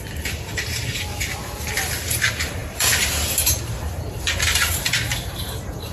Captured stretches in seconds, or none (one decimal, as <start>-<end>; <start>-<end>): 1.1-1.7